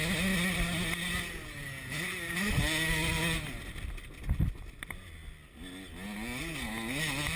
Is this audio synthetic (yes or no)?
no